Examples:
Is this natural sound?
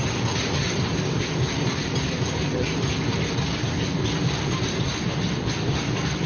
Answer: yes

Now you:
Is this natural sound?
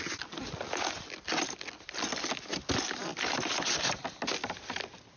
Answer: yes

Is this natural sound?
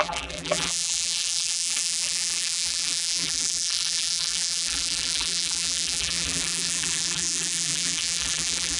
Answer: no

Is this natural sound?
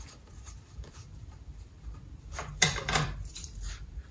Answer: no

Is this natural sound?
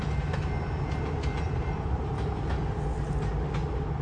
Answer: yes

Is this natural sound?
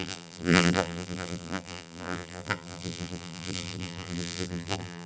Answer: no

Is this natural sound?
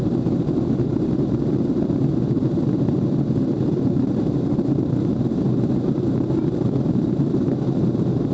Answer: no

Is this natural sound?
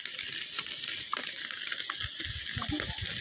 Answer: yes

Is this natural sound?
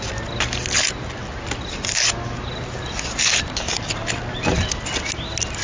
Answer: yes